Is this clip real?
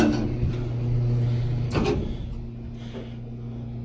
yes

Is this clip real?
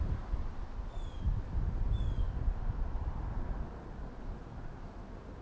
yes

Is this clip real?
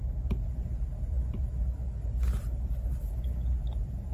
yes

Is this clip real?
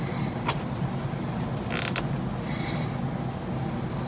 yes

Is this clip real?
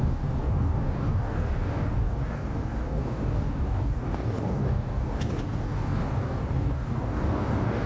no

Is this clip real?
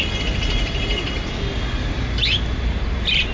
yes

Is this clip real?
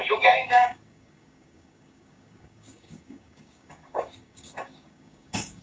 no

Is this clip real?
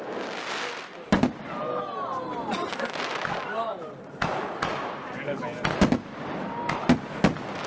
yes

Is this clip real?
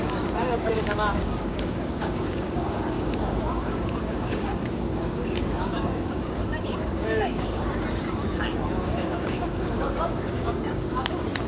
no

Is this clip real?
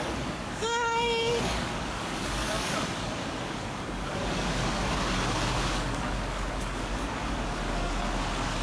no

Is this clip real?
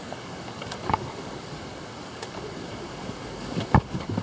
no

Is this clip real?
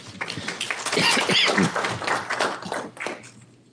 yes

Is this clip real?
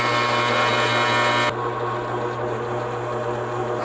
yes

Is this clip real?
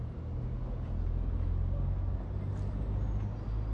yes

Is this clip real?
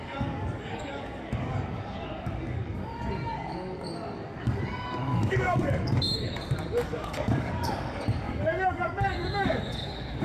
no